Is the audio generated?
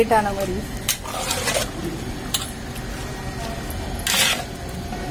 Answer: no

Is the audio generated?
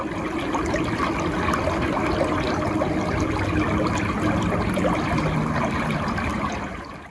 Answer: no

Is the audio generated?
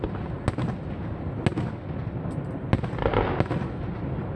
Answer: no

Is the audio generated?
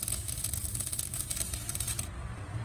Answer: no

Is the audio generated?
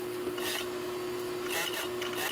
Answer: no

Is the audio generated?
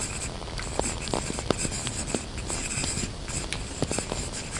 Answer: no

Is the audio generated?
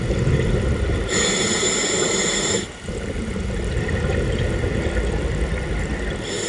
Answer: no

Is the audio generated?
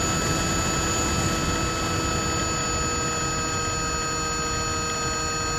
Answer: no